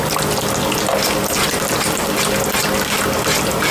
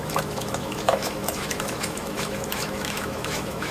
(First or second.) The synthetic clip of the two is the second